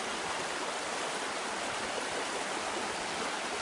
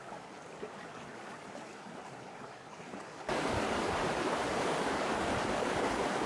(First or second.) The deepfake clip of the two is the second